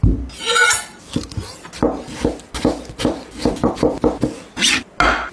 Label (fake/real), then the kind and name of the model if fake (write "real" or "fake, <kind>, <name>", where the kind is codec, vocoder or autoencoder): real